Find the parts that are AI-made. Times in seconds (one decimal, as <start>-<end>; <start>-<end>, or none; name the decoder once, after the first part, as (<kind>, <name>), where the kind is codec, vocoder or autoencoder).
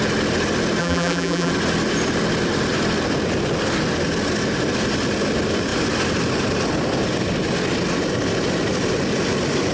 0.8-1.5 (vocoder, BigVGAN v2)